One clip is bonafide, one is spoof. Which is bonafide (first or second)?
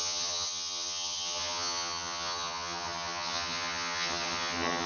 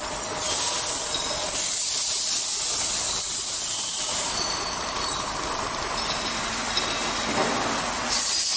second